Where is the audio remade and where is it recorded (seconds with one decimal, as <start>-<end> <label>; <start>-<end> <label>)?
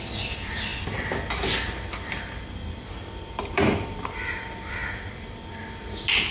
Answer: 0.0-0.7 remade; 0.7-3.1 recorded; 3.1-6.3 remade